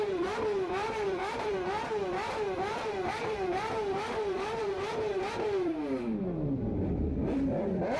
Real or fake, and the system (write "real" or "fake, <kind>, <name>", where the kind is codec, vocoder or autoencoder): fake, vocoder, BigVGAN v2